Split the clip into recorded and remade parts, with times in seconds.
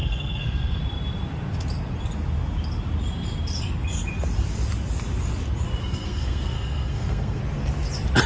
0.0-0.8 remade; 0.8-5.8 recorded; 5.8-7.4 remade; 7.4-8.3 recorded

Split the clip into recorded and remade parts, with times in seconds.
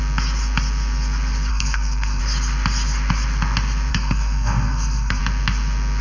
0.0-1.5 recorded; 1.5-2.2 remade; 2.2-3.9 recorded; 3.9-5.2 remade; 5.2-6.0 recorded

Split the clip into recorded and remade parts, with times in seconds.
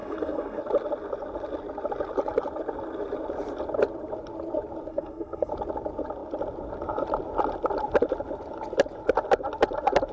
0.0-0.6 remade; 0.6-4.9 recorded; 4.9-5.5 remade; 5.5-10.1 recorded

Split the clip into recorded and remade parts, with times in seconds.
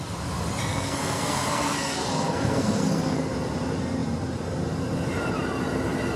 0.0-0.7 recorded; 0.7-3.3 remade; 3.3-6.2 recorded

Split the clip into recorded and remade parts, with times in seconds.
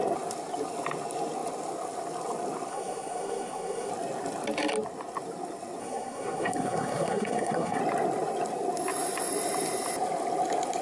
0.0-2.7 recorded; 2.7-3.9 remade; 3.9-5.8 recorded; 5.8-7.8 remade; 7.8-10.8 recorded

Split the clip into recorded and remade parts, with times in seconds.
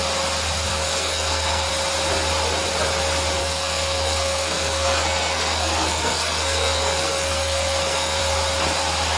0.0-0.7 recorded; 0.7-1.7 remade; 1.7-3.4 recorded; 3.4-8.2 remade; 8.2-9.2 recorded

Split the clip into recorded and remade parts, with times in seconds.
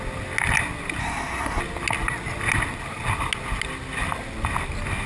0.0-1.0 recorded; 1.0-1.6 remade; 1.6-5.1 recorded